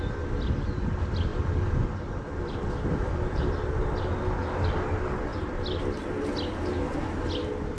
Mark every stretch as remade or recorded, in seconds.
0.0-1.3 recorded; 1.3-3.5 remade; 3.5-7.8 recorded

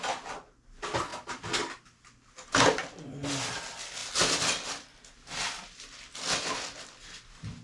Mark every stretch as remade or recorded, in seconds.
0.0-7.6 recorded

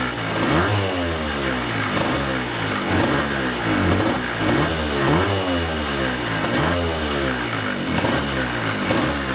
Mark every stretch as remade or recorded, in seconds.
0.0-9.3 recorded

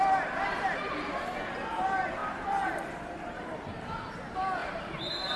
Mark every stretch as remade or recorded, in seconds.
0.0-2.2 recorded; 2.2-4.1 remade; 4.1-4.6 recorded; 4.6-5.4 remade

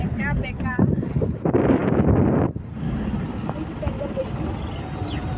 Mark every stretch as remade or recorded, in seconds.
0.0-5.4 recorded